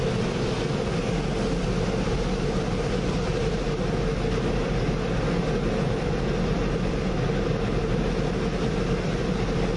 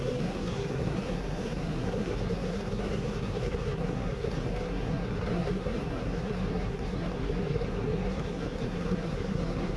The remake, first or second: second